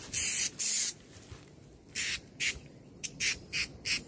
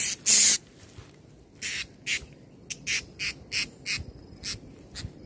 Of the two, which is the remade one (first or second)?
first